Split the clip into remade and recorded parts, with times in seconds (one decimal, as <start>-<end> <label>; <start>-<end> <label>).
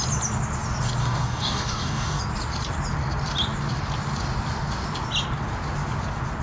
0.0-1.0 recorded; 1.0-2.2 remade; 2.2-6.4 recorded